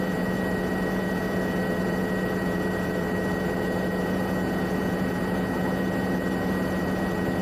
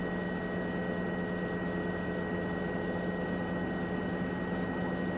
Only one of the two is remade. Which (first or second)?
first